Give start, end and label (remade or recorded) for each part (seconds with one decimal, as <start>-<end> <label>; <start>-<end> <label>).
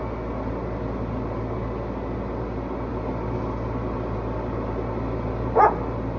0.0-6.2 recorded